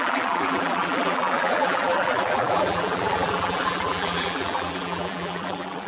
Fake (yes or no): yes